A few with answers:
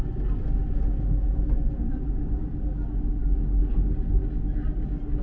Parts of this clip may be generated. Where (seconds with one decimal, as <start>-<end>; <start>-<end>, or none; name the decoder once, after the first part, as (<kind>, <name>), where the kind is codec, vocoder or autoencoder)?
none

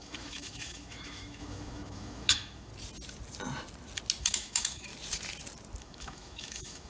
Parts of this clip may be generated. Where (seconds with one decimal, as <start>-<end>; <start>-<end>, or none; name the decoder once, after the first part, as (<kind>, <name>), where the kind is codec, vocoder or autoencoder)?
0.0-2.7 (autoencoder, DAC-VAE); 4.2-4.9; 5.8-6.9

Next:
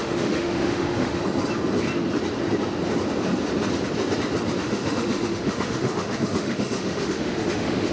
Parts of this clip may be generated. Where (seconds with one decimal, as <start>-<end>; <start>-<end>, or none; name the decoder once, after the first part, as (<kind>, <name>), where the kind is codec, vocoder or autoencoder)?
0.0-1.2 (autoencoder, DAC-VAE); 4.6-7.9

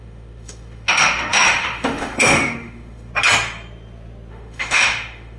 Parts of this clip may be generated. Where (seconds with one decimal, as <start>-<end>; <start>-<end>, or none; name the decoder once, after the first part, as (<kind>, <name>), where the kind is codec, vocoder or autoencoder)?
0.0-3.1 (autoencoder, DAC-VAE); 4.3-5.4

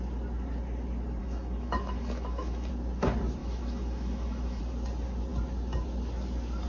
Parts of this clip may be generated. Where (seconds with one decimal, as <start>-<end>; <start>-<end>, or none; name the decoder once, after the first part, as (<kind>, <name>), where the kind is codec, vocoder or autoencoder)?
1.2-2.7 (autoencoder, DAC-VAE); 3.4-4.6